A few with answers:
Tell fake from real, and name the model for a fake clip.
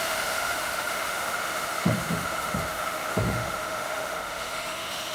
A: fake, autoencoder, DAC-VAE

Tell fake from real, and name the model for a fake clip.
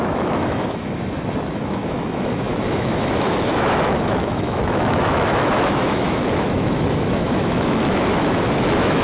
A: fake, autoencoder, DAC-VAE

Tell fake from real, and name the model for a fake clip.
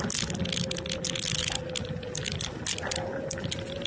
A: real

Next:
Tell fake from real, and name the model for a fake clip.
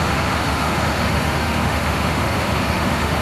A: fake, autoencoder, DAC-VAE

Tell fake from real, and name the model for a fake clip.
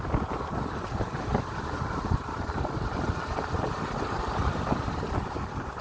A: real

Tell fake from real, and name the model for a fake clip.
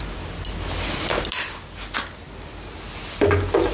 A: real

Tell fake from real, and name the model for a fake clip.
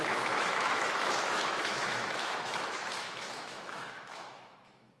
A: fake, autoencoder, DAC-VAE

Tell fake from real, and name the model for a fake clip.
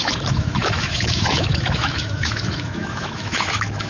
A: fake, autoencoder, DAC-VAE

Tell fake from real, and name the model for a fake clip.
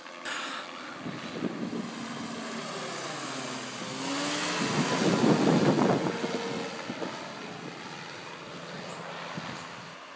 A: real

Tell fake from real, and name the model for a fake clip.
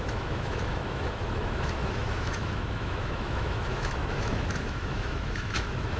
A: fake, autoencoder, DAC-VAE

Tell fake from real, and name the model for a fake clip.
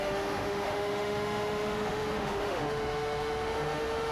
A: fake, autoencoder, DAC-VAE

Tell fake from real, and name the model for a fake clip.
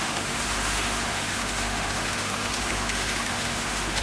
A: fake, autoencoder, DAC-VAE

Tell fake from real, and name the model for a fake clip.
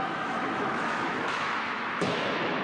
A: fake, autoencoder, DAC-VAE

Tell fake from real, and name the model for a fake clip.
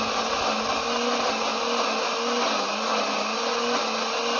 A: real